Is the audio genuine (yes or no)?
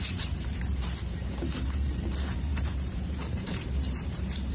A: no